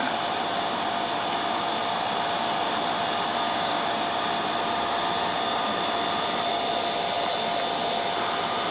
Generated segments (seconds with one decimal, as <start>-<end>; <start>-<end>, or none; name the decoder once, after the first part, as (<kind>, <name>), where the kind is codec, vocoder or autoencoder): 3.3-3.9 (codec, DAC)